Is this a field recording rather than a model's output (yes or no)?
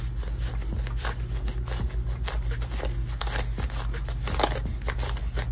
yes